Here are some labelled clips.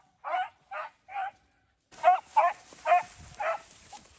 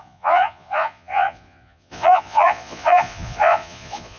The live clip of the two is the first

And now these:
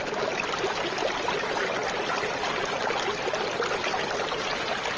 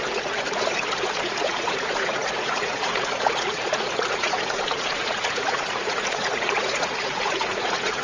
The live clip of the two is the first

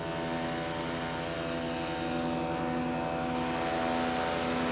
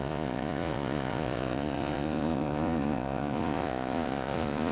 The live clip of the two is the first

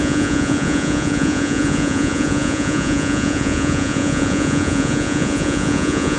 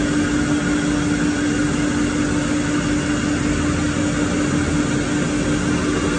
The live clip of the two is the second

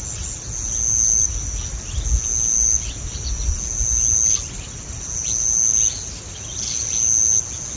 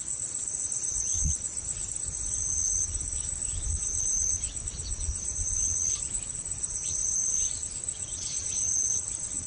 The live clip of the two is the first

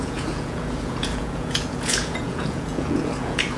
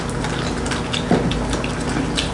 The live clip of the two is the second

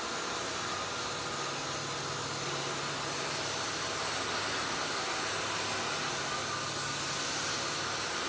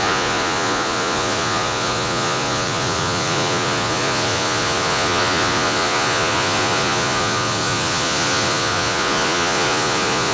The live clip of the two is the first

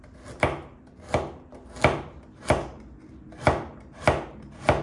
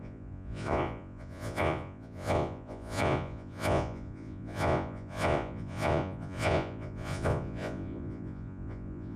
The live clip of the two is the first